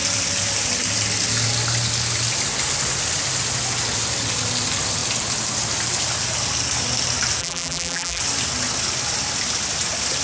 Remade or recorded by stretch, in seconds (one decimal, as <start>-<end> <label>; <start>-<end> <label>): 0.0-7.4 recorded; 7.4-8.2 remade; 8.2-10.2 recorded